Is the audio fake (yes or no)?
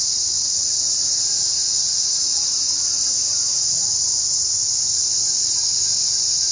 no